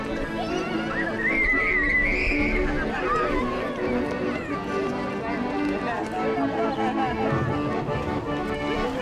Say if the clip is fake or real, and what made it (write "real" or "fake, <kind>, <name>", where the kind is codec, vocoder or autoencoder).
real